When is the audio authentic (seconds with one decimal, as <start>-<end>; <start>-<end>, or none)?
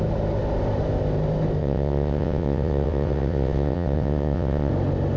0.0-1.6; 4.7-5.2